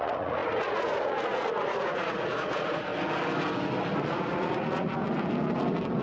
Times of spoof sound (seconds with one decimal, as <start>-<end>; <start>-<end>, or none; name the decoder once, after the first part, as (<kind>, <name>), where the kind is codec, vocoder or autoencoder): 0.0-2.9 (vocoder, Vocos); 4.0-5.0